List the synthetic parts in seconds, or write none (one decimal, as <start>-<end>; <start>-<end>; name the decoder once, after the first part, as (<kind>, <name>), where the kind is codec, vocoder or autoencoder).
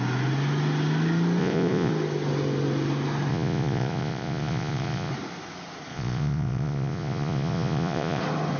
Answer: 1.4-1.9 (vocoder, Vocos); 3.3-5.1; 5.9-8.2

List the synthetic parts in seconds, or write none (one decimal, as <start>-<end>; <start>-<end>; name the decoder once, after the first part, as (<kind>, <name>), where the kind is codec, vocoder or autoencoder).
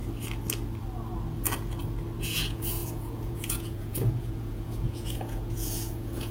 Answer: 2.2-6.3 (vocoder, Vocos)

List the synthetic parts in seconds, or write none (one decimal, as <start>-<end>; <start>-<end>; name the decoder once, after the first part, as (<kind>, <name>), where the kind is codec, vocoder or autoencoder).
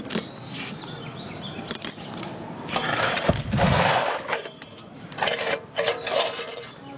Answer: none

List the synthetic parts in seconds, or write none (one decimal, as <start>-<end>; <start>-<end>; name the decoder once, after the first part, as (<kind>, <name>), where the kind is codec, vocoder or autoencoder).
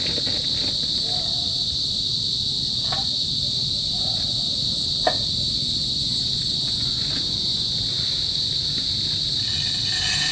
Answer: 5.8-7.7 (vocoder, Vocos)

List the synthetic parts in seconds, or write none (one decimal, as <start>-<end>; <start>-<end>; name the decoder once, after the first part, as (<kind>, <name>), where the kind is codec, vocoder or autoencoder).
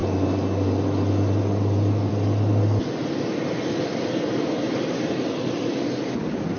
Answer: none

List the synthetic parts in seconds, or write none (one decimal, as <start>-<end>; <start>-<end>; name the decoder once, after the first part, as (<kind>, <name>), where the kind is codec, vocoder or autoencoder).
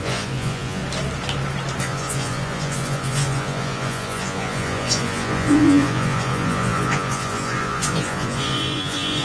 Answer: 0.0-0.8 (vocoder, Vocos); 1.8-9.2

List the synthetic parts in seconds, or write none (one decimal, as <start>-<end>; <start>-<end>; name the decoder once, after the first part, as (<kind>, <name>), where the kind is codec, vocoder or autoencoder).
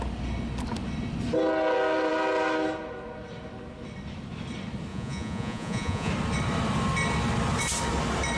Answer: 4.9-6.1 (vocoder, Vocos)